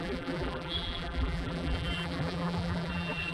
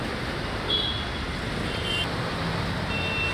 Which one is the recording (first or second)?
second